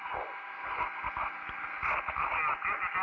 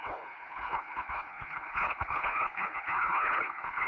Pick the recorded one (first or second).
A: first